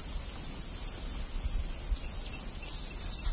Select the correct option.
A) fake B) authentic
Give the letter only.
B